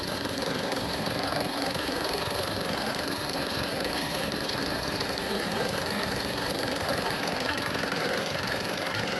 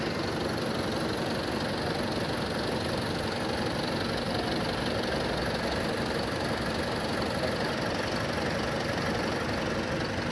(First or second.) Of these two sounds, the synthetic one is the first